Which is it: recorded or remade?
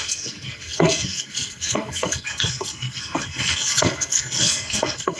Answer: remade